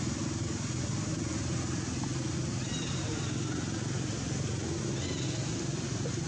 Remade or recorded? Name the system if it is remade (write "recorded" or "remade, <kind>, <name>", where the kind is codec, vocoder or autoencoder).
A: recorded